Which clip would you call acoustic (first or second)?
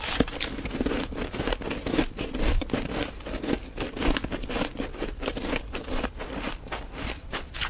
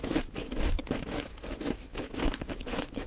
first